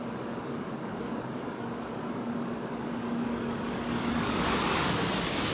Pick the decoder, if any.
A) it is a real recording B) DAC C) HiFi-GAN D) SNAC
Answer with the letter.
B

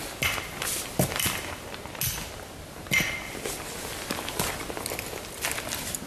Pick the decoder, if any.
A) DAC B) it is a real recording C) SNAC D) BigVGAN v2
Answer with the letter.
B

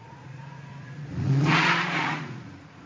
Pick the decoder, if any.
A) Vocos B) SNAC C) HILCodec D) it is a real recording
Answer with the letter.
A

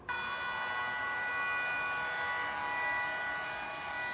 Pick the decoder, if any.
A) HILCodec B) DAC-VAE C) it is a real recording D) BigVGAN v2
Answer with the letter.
C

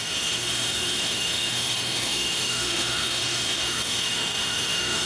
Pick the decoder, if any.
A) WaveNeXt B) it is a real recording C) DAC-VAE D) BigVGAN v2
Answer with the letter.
C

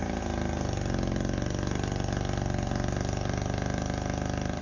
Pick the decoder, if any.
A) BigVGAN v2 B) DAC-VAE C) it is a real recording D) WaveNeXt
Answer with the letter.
C